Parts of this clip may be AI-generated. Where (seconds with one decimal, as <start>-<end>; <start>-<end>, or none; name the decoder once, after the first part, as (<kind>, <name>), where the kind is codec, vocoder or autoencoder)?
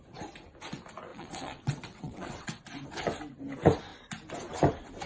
1.1-2.6 (vocoder, WaveNeXt)